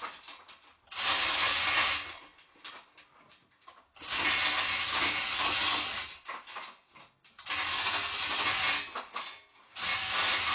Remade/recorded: recorded